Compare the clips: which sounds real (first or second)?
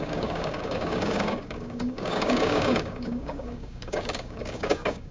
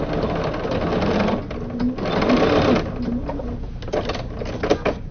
second